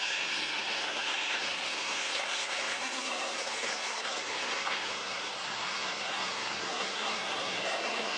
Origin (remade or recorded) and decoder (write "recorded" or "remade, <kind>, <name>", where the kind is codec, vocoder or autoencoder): remade, codec, SNAC